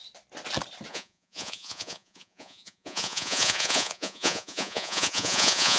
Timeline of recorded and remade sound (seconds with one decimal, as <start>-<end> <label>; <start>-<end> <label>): 0.0-0.9 recorded; 0.9-5.8 remade